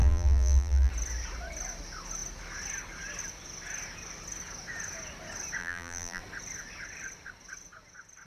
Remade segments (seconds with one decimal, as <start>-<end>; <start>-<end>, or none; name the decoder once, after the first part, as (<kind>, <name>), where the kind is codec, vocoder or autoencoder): 0.0-0.9 (vocoder, BigVGAN v2); 5.6-6.2